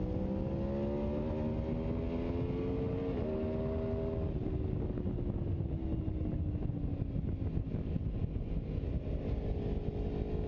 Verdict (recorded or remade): recorded